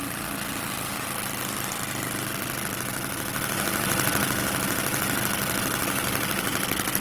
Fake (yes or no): no